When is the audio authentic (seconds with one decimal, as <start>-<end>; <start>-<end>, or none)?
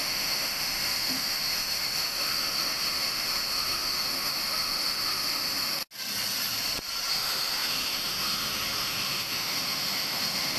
5.8-7.1